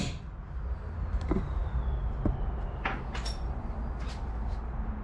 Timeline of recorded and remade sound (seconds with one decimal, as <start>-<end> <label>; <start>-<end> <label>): 0.0-5.0 recorded